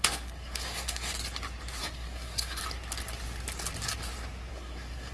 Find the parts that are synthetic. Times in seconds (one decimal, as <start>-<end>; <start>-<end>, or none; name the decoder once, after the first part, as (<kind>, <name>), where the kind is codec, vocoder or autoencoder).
0.0-1.1 (codec, SNAC); 1.8-2.6; 4.5-5.1